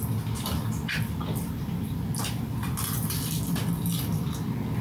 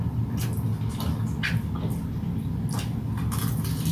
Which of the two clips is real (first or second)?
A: second